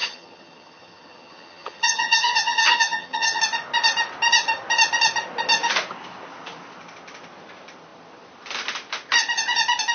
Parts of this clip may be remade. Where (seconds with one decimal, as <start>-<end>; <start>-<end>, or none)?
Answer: 0.0-3.4